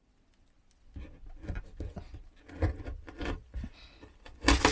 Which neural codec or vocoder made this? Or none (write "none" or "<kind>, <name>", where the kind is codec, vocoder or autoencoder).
none